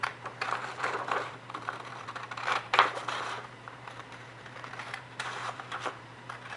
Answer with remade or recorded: remade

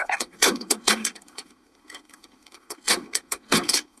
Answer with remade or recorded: remade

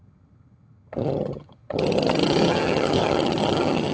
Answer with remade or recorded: remade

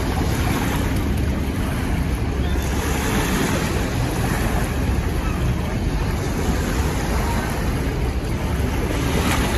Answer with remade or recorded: recorded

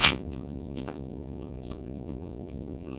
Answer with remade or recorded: remade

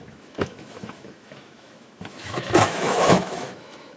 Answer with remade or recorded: remade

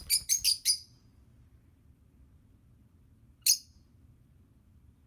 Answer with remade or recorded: recorded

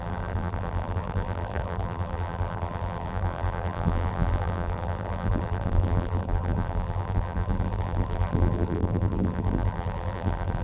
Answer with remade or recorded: remade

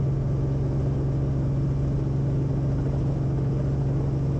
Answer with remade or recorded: recorded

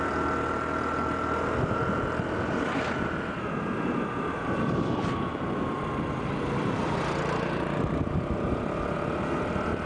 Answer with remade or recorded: recorded